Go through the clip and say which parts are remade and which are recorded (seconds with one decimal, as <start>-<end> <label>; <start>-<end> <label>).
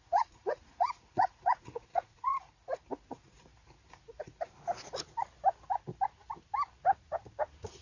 0.0-2.3 remade; 2.3-3.1 recorded; 3.1-3.5 remade; 3.5-7.8 recorded